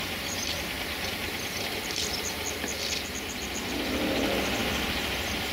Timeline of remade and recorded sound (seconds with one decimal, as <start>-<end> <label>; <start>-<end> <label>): 0.0-5.5 recorded